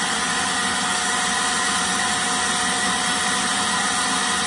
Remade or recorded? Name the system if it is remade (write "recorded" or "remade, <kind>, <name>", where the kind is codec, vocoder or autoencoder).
recorded